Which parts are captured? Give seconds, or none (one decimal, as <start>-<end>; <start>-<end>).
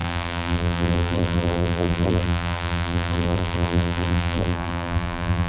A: none